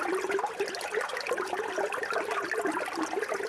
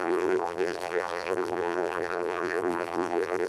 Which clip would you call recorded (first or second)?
first